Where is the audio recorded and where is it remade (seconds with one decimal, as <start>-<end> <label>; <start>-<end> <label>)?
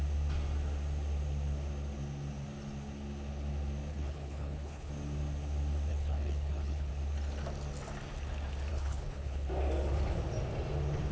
0.0-3.9 recorded; 3.9-4.9 remade; 4.9-5.9 recorded; 5.9-6.9 remade; 6.9-8.7 recorded; 8.7-9.5 remade; 9.5-11.1 recorded